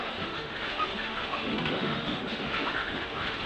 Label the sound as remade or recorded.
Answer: remade